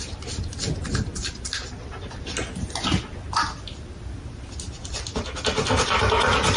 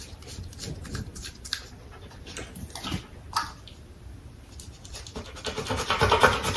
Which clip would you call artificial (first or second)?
second